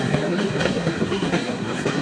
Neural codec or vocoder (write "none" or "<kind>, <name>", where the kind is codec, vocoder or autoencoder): codec, SNAC